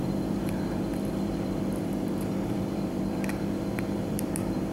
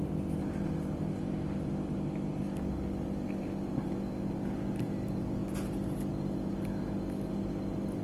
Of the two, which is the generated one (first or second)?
first